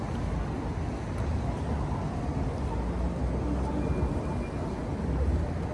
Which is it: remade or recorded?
recorded